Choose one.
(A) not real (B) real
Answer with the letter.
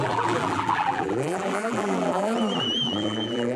A